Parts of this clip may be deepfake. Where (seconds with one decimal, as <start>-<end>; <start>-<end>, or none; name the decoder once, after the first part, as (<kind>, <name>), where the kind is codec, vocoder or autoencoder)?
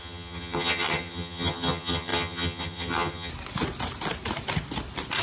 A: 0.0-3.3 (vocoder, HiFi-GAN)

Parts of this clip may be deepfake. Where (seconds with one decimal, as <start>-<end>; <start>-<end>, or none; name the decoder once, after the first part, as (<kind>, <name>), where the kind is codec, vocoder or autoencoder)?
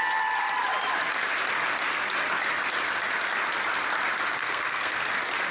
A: 4.4-5.0 (codec, SNAC)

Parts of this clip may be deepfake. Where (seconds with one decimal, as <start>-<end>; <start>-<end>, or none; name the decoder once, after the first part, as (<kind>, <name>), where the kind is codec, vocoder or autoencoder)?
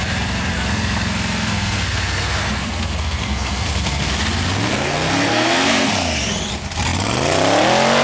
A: 0.5-4.1 (codec, SNAC); 4.7-5.9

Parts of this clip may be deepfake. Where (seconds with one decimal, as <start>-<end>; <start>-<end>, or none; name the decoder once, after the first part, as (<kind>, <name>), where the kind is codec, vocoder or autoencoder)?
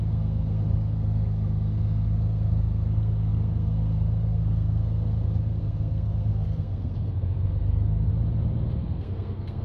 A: 0.0-8.1 (codec, SNAC); 8.8-9.6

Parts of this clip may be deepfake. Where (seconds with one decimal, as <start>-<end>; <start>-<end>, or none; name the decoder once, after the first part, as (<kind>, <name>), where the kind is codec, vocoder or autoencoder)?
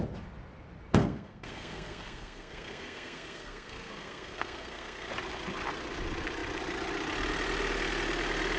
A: 1.0-5.1 (codec, SNAC)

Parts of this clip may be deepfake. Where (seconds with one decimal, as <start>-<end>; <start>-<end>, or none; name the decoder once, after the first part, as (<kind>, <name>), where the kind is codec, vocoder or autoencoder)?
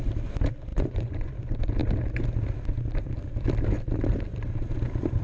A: 0.7-1.3 (vocoder, Vocos)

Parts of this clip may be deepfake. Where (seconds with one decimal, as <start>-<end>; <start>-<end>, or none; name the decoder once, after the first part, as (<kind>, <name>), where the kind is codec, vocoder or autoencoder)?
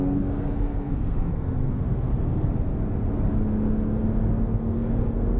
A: 0.0-2.1 (codec, SNAC); 4.3-5.4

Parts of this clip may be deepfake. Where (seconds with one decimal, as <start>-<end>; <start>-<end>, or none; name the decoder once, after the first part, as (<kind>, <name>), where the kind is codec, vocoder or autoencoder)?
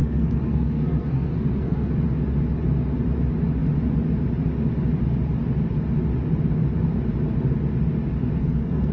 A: 0.0-1.9 (codec, SNAC); 8.4-8.9